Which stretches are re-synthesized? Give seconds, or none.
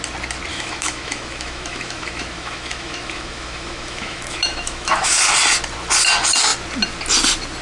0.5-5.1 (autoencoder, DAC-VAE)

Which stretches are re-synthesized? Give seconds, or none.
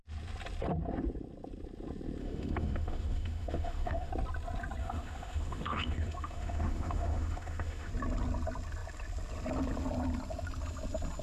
2.2-4.1 (autoencoder, DAC-VAE); 4.8-7.9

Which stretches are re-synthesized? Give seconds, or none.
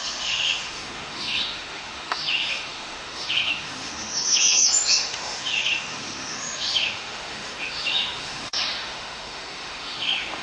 0.0-10.4 (autoencoder, DAC-VAE)